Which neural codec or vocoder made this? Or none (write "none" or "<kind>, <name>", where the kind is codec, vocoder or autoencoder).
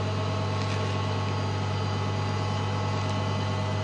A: none